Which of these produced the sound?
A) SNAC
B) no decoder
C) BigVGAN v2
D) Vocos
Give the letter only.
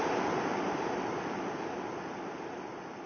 B